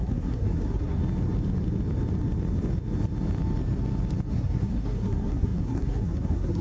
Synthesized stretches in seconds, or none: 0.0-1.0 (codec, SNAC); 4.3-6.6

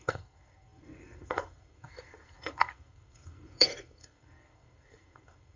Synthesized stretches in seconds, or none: 0.0-5.6 (codec, SNAC)